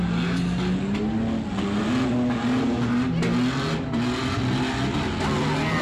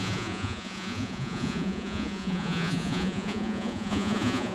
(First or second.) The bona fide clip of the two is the first